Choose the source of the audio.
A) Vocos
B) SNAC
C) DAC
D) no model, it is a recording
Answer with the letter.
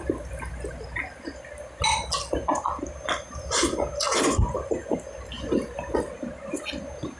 D